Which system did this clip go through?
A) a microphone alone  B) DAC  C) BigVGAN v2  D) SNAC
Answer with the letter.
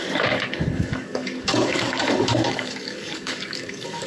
B